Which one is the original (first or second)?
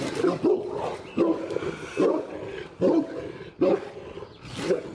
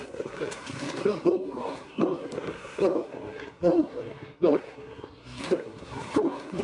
first